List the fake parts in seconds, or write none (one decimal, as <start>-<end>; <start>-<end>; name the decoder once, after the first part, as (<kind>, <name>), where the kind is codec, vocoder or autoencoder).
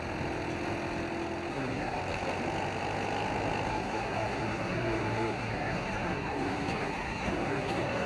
1.5-2.0 (codec, SNAC); 3.7-8.1